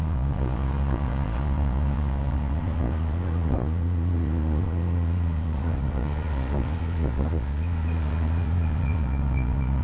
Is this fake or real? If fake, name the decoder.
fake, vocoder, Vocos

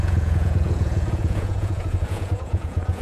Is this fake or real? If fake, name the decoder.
fake, vocoder, Vocos